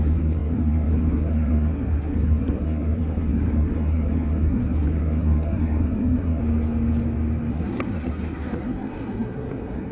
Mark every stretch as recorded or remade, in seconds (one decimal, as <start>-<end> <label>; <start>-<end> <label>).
0.0-6.4 remade; 6.4-7.5 recorded; 7.5-9.9 remade